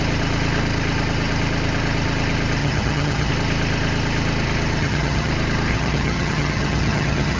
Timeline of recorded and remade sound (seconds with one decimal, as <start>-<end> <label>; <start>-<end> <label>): 0.0-2.6 recorded; 2.6-3.3 remade; 3.3-4.8 recorded; 4.8-5.3 remade; 5.3-5.7 recorded; 5.7-7.4 remade